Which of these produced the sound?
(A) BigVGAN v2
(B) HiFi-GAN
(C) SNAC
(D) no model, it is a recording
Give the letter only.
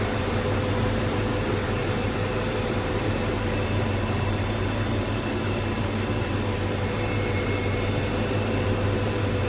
A